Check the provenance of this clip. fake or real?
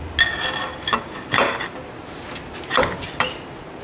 real